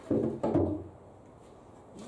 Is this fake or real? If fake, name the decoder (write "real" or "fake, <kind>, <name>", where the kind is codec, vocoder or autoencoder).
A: real